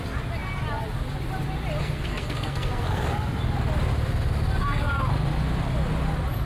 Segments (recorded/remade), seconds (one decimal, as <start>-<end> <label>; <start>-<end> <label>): 0.0-1.8 recorded; 1.8-3.4 remade; 3.4-4.6 recorded; 4.6-5.1 remade; 5.1-6.4 recorded